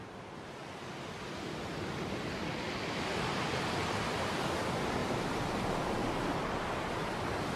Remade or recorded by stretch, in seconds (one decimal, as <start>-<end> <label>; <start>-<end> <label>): 0.0-0.5 remade; 0.5-5.0 recorded; 5.0-6.2 remade; 6.2-7.6 recorded